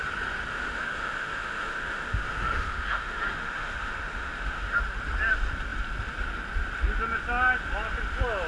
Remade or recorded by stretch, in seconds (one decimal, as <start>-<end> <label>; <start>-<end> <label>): 0.0-0.5 recorded; 0.5-4.8 remade; 4.8-8.5 recorded